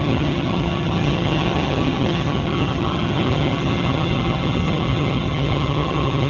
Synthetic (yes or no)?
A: yes